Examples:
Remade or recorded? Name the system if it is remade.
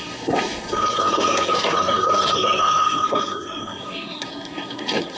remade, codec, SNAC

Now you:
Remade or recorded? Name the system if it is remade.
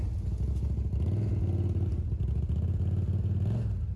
recorded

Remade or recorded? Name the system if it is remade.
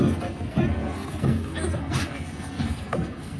remade, codec, SNAC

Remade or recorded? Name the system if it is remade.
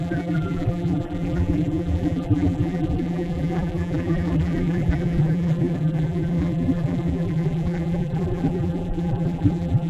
remade, vocoder, BigVGAN v2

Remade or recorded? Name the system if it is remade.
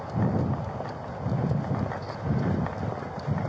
recorded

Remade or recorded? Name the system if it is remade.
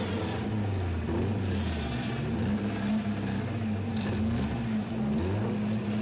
recorded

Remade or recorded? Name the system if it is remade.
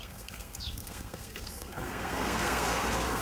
remade, codec, SNAC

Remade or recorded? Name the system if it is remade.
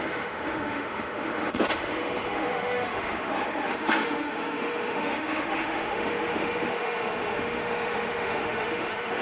remade, autoencoder, DAC-VAE